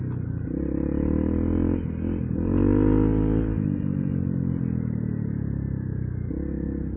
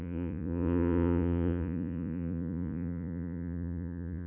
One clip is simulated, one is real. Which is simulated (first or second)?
second